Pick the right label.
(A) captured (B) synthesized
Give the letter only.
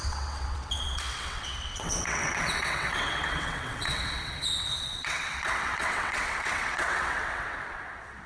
B